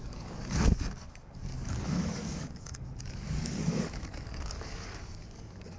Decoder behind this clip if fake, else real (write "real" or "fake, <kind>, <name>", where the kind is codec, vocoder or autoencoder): fake, codec, DAC